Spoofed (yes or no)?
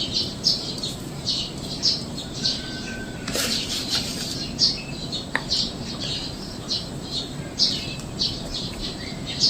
yes